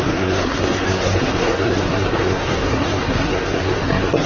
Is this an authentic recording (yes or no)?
no